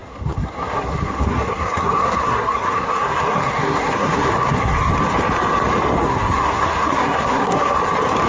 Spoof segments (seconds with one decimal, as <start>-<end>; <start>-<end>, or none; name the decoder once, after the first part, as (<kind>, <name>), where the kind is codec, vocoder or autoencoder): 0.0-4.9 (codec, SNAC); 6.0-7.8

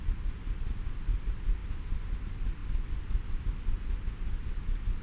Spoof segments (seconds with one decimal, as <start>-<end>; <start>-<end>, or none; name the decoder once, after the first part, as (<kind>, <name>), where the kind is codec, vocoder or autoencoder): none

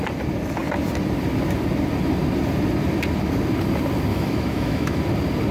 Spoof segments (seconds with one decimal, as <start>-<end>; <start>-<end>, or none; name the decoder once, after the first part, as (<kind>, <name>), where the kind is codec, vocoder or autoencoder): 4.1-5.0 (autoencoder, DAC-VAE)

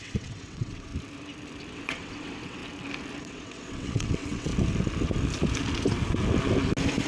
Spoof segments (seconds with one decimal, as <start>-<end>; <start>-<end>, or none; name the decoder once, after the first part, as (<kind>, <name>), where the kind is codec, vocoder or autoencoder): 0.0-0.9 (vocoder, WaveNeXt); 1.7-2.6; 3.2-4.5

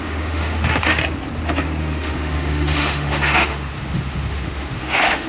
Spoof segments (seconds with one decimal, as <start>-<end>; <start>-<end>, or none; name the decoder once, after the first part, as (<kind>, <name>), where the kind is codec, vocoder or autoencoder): 0.0-1.0 (autoencoder, DAC-VAE); 1.8-5.3

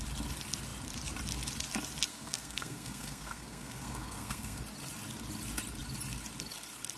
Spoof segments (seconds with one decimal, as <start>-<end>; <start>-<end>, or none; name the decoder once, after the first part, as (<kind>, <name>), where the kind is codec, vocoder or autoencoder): 2.1-4.6 (codec, SNAC)

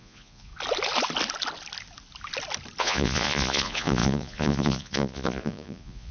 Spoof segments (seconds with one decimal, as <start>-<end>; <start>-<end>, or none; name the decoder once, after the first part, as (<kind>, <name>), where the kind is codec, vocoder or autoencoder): 0.0-0.5 (vocoder, Vocos); 2.8-6.1